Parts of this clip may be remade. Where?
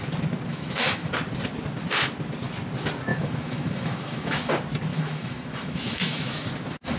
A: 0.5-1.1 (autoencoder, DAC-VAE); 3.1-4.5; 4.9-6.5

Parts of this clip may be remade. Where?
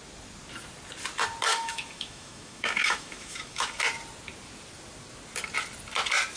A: 1.5-3.8 (autoencoder, DAC-VAE)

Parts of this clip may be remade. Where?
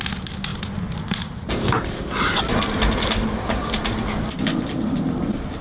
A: 0.5-2.4 (vocoder, BigVGAN v2)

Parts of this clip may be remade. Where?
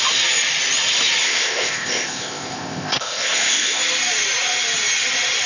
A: 1.2-3.8 (codec, ZipCodec)